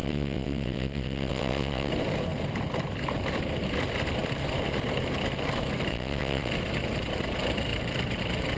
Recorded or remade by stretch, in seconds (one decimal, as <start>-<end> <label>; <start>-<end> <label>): 0.0-1.9 remade; 1.9-5.9 recorded; 5.9-6.5 remade; 6.5-8.6 recorded